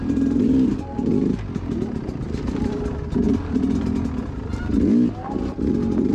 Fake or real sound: real